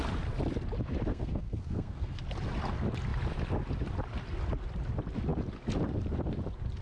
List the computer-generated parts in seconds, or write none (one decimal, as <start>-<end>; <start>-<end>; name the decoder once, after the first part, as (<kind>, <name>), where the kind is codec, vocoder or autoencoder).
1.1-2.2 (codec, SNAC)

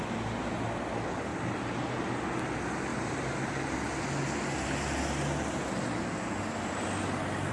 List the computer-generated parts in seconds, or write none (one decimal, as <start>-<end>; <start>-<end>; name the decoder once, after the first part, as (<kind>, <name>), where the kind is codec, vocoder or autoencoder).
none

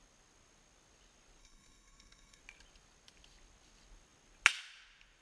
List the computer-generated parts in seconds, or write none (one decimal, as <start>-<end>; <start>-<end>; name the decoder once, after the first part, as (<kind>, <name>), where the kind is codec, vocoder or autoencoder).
1.4-2.4 (codec, SNAC)